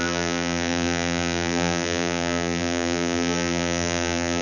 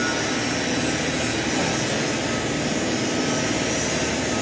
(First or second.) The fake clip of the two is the first